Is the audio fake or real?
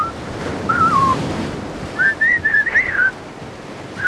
real